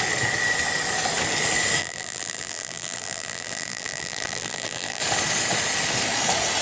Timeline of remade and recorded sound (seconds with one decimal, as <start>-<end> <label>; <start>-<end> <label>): 0.0-1.8 recorded; 1.8-5.0 remade; 5.0-6.6 recorded

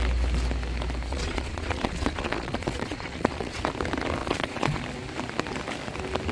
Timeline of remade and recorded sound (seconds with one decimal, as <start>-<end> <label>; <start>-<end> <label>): 0.0-1.1 recorded; 1.1-3.6 remade; 3.6-4.2 recorded; 4.2-4.8 remade; 4.8-6.3 recorded

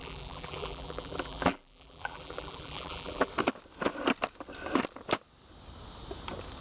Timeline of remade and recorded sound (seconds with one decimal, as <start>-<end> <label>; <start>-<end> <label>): 0.0-3.3 remade; 3.3-6.6 recorded

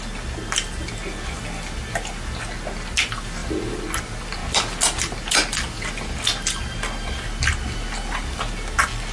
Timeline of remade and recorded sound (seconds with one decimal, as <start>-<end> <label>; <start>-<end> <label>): 0.0-9.1 recorded

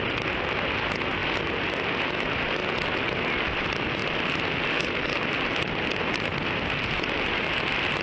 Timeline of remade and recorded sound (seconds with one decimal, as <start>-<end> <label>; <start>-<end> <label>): 0.0-8.0 recorded